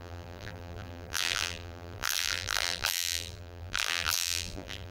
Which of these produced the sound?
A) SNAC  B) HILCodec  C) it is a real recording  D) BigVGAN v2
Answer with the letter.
D